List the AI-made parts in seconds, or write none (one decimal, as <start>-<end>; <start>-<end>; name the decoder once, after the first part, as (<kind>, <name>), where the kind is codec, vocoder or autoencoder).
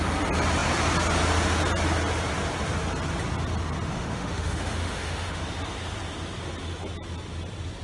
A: 3.9-5.4 (autoencoder, DAC-VAE)